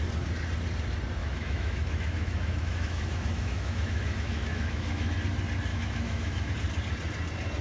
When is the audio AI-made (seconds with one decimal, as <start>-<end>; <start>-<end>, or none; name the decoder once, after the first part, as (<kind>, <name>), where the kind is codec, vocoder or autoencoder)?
1.2-5.1 (autoencoder, DAC-VAE); 5.7-6.5